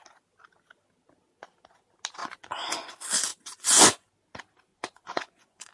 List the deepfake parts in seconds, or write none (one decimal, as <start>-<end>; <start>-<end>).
2.2-2.9; 3.3-4.1; 4.7-5.7